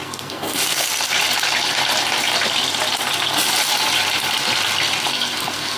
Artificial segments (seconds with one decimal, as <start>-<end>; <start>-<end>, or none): 0.0-0.9; 5.1-5.8

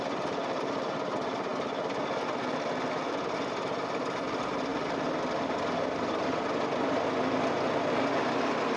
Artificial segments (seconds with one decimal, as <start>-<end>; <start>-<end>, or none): none

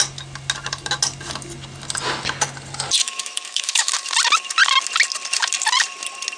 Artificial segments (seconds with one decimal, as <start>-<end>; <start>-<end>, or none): 3.0-3.9

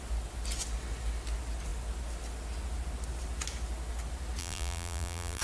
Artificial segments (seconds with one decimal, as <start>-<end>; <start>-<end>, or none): 4.4-5.4

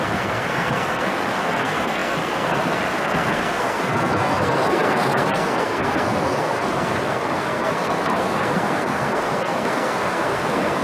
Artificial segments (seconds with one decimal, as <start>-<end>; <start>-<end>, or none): 0.0-10.8

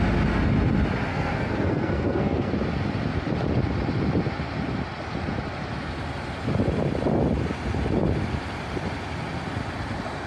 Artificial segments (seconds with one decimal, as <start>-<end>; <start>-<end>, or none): 1.1-2.5

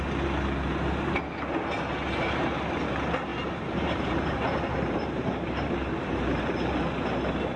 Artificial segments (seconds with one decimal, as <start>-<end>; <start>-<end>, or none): 3.3-6.8